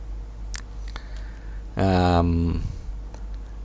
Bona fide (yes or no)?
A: yes